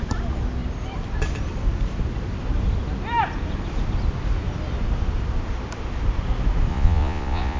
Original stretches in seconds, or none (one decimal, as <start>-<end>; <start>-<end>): 0.0-6.7